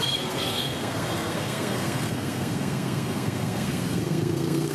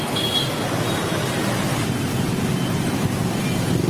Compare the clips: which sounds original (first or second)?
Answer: second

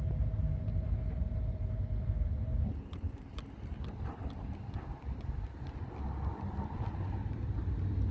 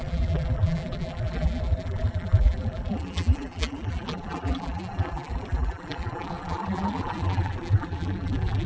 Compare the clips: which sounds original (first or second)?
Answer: first